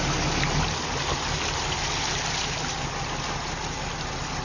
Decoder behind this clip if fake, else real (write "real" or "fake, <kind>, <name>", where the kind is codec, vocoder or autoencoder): real